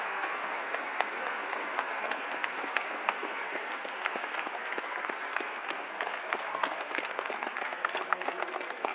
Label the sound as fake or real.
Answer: fake